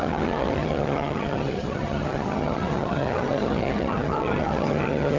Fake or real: fake